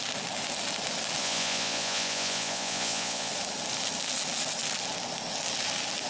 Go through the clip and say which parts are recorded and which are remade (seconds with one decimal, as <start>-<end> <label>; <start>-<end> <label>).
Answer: 0.0-1.2 recorded; 1.2-3.3 remade; 3.3-6.1 recorded